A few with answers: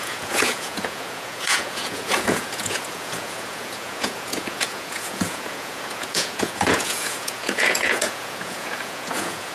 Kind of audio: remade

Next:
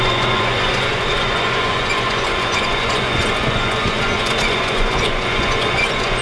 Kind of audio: remade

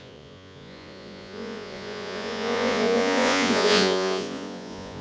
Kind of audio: remade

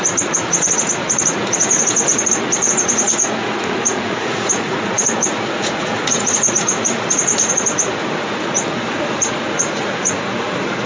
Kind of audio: remade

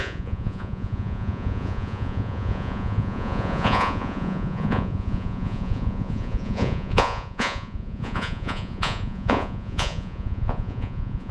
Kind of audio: remade